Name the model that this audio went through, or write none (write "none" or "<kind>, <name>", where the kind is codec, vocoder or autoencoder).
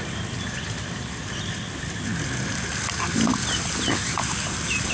none